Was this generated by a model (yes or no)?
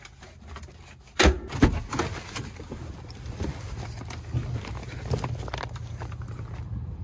no